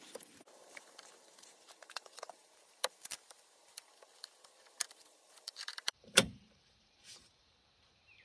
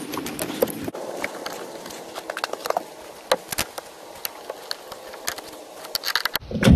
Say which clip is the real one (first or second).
second